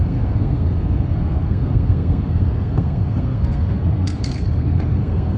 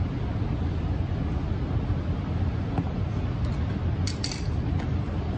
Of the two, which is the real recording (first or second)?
second